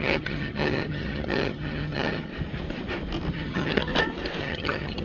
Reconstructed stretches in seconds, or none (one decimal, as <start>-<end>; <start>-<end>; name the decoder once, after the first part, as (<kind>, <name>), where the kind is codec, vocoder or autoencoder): 0.0-2.3 (vocoder, HiFi-GAN); 3.3-3.9; 4.4-5.0